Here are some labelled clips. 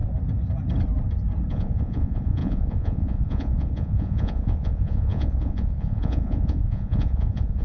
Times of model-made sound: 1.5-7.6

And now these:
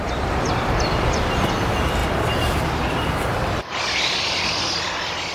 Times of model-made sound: none